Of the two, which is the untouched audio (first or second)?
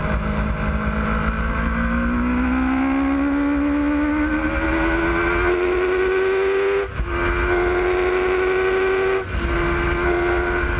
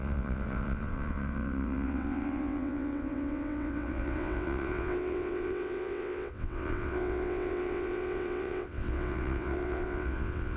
first